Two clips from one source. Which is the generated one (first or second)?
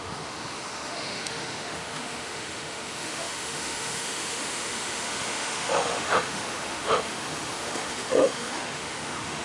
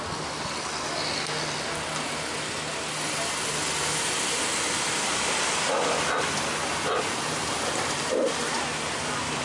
first